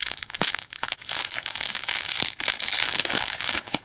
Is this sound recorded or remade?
remade